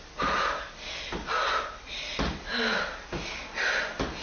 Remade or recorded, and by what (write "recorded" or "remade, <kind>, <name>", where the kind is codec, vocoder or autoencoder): recorded